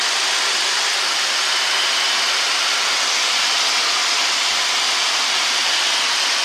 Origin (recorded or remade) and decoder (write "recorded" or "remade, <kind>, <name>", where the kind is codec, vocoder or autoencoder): recorded